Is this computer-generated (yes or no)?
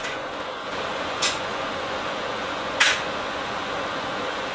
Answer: yes